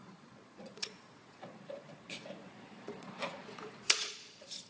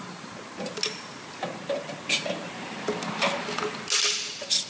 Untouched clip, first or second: second